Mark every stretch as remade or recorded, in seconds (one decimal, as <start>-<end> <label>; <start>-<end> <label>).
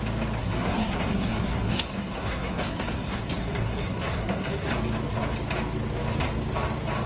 0.0-0.4 recorded; 0.4-4.7 remade; 4.7-7.1 recorded